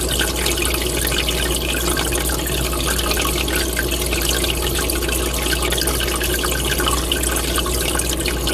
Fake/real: real